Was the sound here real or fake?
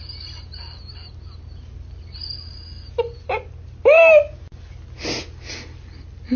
real